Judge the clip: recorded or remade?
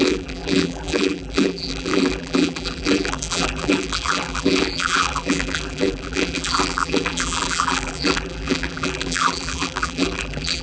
remade